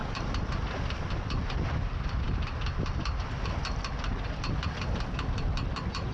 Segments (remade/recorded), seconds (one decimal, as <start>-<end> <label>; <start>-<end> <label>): 0.0-6.1 recorded